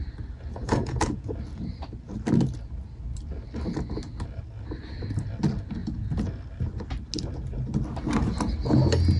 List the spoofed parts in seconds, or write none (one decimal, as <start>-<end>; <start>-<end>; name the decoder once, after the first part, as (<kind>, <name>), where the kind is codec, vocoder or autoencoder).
0.6-1.3 (vocoder, Vocos); 5.8-6.3